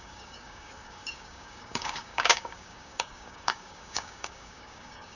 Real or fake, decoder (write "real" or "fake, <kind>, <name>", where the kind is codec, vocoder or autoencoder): fake, codec, DAC